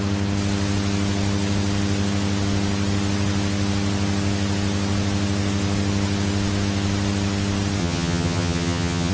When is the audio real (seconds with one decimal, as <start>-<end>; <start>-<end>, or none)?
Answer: 0.0-7.8